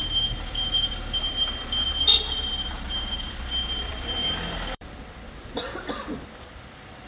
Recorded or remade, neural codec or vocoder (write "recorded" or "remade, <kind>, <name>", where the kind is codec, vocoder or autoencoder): remade, vocoder, BigVGAN v2